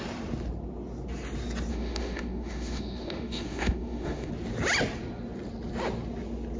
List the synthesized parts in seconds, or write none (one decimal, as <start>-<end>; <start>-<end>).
1.7-4.3